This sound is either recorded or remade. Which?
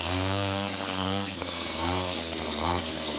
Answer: remade